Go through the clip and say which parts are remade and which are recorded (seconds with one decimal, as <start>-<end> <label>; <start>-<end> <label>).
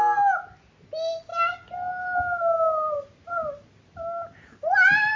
0.0-5.2 recorded